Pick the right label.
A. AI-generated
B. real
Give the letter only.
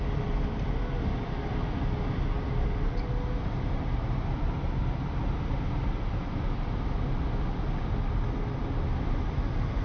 B